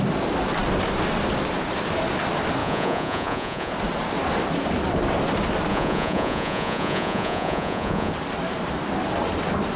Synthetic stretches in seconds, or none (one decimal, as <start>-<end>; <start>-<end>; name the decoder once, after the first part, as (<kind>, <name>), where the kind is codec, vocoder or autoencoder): 2.6-3.7 (vocoder, Vocos); 5.7-8.1